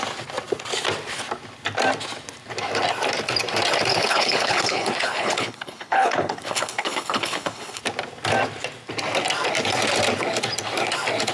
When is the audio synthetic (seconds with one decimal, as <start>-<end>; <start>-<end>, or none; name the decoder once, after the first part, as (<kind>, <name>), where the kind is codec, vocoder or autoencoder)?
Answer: 3.9-7.8 (codec, HILCodec)